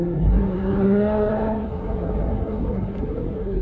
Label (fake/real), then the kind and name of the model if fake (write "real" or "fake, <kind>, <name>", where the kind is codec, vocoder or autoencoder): fake, codec, SNAC